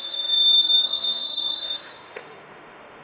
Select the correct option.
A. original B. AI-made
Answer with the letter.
B